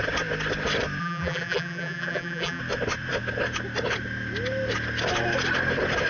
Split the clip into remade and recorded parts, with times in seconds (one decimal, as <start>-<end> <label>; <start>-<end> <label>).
0.0-1.0 recorded; 1.0-2.6 remade; 2.6-6.1 recorded